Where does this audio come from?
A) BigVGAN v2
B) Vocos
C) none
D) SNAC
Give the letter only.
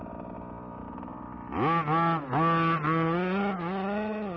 C